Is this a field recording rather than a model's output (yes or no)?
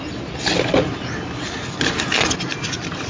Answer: yes